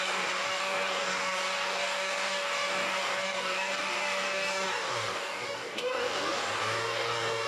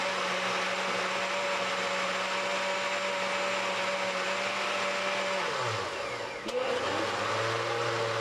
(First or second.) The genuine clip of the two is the second